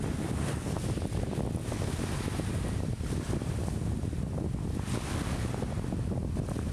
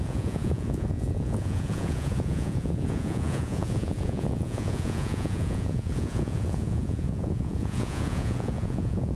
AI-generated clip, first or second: second